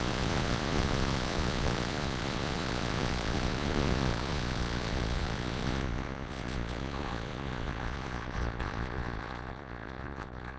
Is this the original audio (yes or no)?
no